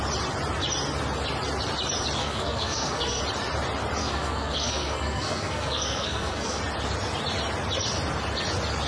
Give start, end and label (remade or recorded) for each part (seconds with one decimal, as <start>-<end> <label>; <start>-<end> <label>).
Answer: 0.0-2.2 recorded; 2.2-3.2 remade; 3.2-4.0 recorded; 4.0-6.6 remade; 6.6-8.9 recorded